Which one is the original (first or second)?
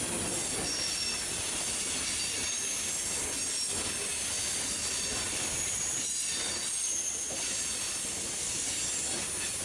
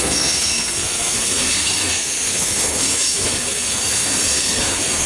first